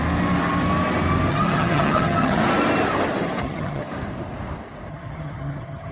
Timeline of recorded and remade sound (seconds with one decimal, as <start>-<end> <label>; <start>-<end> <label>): 0.0-1.3 recorded; 1.3-2.4 remade; 2.4-3.4 recorded; 3.4-3.8 remade; 3.8-4.9 recorded; 4.9-5.9 remade